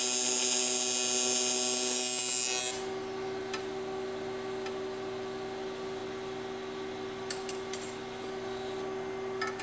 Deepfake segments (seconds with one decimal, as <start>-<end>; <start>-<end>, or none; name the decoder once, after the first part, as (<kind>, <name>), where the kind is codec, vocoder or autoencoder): none